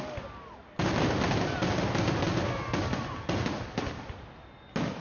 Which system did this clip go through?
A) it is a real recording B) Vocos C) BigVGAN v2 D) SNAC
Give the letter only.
A